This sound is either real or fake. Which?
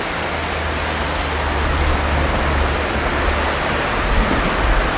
real